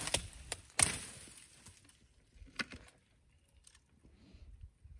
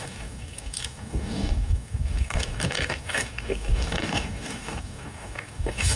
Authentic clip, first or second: first